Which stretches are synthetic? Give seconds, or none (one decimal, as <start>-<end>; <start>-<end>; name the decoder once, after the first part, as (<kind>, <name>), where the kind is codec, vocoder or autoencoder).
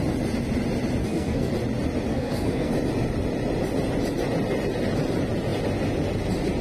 1.0-1.5 (codec, SNAC); 2.1-2.7